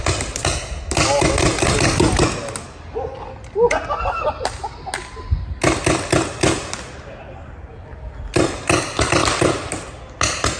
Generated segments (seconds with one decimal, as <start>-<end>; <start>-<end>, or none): none